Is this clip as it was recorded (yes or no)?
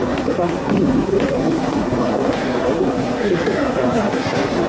no